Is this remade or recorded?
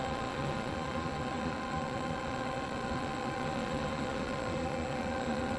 remade